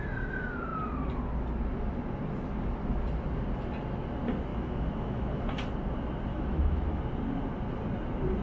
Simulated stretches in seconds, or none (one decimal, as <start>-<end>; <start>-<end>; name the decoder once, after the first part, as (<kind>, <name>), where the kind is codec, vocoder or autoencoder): 4.5-5.4 (autoencoder, DAC-VAE); 6.3-7.0